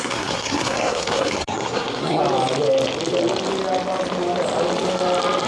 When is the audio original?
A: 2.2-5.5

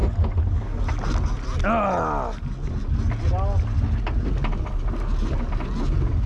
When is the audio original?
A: 0.0-6.3